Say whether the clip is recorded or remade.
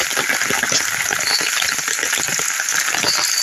recorded